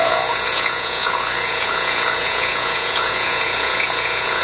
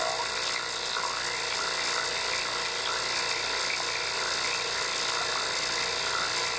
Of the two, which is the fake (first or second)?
first